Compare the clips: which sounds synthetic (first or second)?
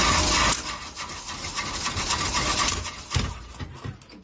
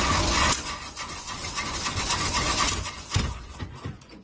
second